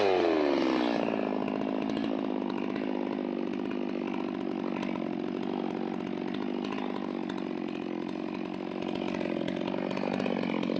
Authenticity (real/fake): real